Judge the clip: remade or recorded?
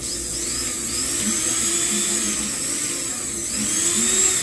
recorded